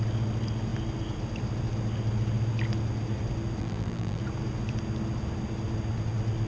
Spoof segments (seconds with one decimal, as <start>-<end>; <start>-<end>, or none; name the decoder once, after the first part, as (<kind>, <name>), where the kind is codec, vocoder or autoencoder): 3.6-4.2 (vocoder, BigVGAN v2)